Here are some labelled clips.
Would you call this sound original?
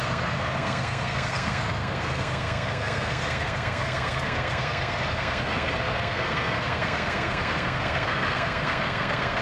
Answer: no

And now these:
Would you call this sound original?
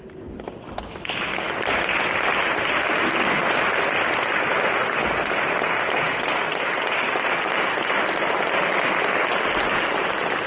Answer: yes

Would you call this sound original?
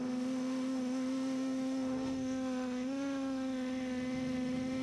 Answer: no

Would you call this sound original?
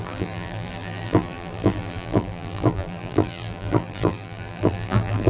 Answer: no